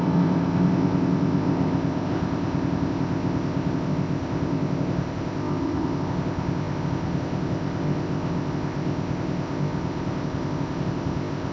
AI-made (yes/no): yes